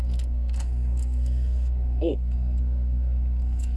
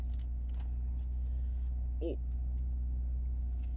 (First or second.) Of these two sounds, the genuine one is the second